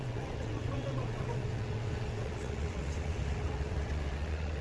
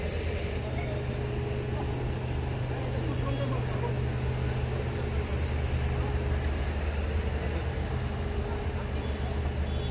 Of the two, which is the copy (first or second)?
first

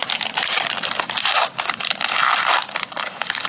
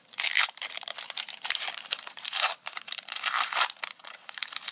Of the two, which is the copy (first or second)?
second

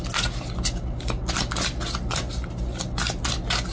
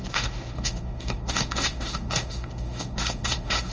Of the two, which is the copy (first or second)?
second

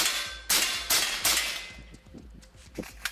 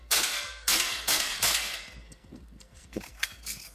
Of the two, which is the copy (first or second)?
second